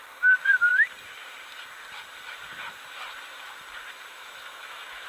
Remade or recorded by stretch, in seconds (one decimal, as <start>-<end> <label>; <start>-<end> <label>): 0.0-4.1 recorded; 4.1-5.1 remade